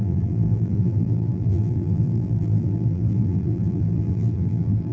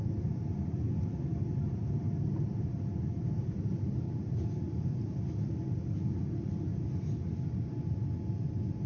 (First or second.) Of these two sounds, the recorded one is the second